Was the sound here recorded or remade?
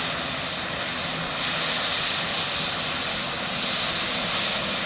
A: recorded